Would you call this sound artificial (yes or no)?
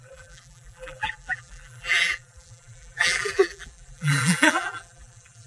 yes